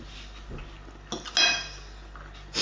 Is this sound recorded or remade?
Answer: recorded